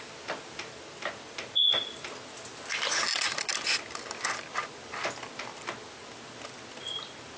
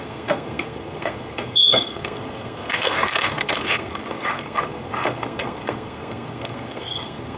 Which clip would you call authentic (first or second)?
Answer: first